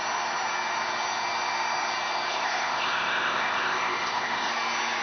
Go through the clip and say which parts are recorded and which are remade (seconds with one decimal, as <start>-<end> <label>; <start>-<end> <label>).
0.0-2.3 recorded; 2.3-4.5 remade; 4.5-5.0 recorded